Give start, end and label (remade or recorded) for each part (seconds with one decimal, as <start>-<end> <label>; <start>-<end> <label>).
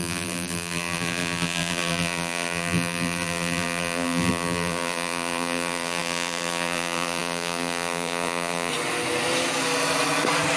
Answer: 0.0-8.7 remade; 8.7-10.6 recorded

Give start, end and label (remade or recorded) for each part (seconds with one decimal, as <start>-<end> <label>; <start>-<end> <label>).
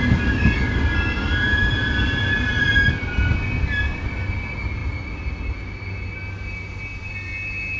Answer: 0.0-7.8 recorded